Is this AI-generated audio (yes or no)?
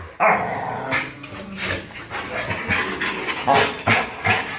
no